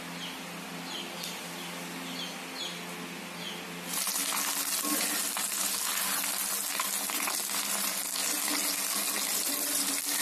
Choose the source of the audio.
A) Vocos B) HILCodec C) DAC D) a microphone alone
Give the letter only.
D